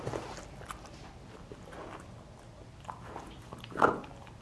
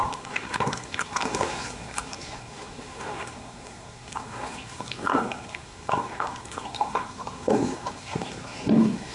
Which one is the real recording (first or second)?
first